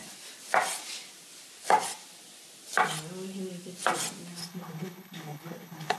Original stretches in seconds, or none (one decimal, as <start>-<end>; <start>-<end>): 0.0-4.4